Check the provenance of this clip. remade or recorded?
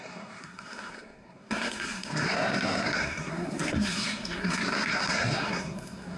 remade